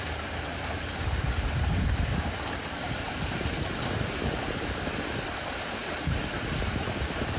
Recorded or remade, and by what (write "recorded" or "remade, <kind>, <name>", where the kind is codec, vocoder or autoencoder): remade, vocoder, BigVGAN v2